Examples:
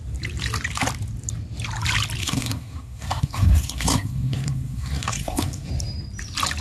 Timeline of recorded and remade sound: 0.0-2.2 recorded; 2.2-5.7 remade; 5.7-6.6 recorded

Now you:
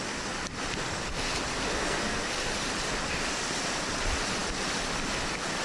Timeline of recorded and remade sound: 0.0-1.8 recorded; 1.8-2.3 remade; 2.3-5.6 recorded

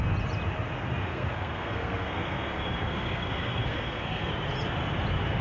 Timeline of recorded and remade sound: 0.0-1.1 recorded; 1.1-4.3 remade; 4.3-5.4 recorded

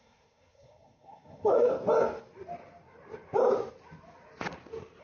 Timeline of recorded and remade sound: 0.0-1.7 remade; 1.7-5.0 recorded

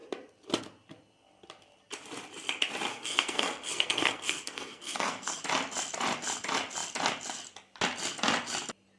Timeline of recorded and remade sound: 0.0-2.9 recorded; 2.9-5.4 remade; 5.4-9.0 recorded

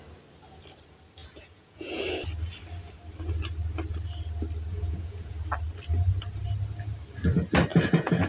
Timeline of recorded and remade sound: 0.0-1.2 recorded; 1.2-2.0 remade; 2.0-4.7 recorded; 4.7-5.3 remade; 5.3-7.7 recorded; 7.7-8.3 remade